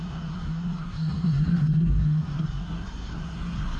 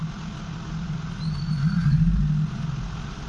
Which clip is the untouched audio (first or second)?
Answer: second